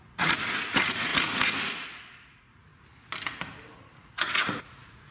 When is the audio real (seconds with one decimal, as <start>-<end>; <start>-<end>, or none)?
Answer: 2.7-4.0